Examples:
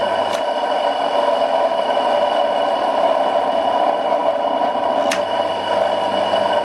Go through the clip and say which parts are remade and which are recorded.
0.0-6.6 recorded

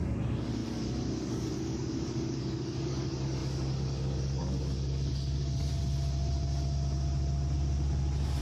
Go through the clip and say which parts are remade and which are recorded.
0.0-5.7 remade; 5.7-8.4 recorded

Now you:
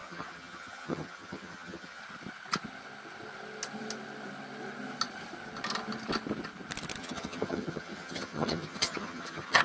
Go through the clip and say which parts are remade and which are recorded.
0.0-2.0 remade; 2.0-7.0 recorded; 7.0-9.6 remade

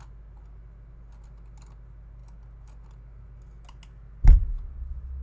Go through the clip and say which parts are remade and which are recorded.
0.0-5.2 recorded

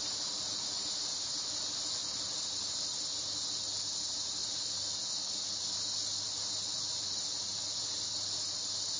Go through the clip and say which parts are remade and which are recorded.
0.0-2.0 recorded; 2.0-2.7 remade; 2.7-9.0 recorded